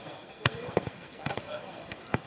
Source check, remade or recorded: remade